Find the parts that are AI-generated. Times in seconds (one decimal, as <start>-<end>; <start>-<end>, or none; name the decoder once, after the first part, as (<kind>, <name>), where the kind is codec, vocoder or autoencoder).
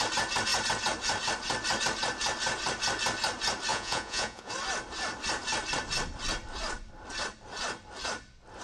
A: 3.7-4.5 (vocoder, Vocos)